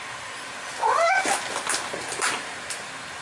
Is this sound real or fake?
real